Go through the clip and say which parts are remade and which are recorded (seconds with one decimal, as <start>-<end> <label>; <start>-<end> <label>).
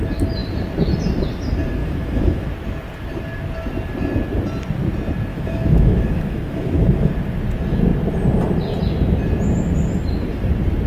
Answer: 0.0-1.8 recorded; 1.8-2.5 remade; 2.5-5.3 recorded; 5.3-7.1 remade; 7.1-10.9 recorded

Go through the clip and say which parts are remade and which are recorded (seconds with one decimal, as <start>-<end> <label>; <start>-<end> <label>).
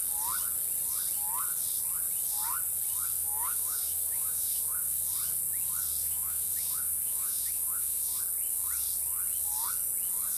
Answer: 0.0-3.2 recorded; 3.2-5.0 remade; 5.0-6.0 recorded; 6.0-8.2 remade; 8.2-10.4 recorded